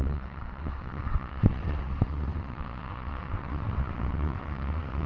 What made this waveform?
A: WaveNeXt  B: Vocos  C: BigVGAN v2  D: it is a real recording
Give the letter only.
A